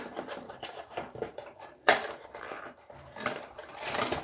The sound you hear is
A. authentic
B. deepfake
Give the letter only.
B